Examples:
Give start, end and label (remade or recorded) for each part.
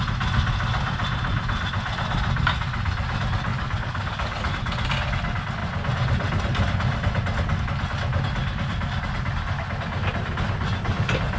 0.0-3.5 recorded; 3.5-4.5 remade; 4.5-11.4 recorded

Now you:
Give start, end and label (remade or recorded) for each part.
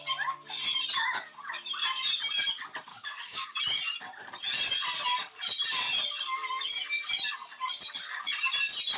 0.0-2.9 recorded; 2.9-3.6 remade; 3.6-9.0 recorded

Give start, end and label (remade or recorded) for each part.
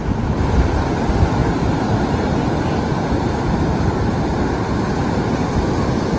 0.0-6.2 recorded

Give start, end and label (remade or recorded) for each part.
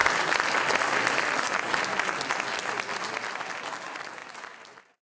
0.0-5.2 recorded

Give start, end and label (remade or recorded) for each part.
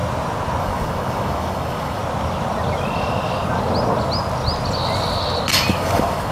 0.0-0.6 recorded; 0.6-2.0 remade; 2.0-5.7 recorded; 5.7-6.3 remade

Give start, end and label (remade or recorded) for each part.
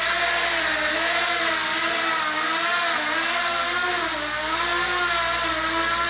0.0-6.1 recorded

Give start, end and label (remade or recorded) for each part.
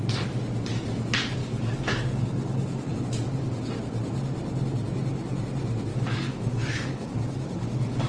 0.0-1.4 recorded; 1.4-2.9 remade; 2.9-5.9 recorded; 5.9-8.1 remade